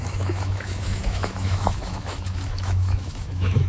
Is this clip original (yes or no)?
no